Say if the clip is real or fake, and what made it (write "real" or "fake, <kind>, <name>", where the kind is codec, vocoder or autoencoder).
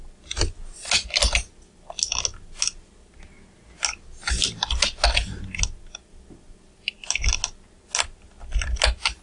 real